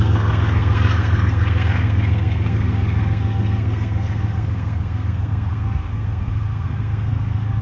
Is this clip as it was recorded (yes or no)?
no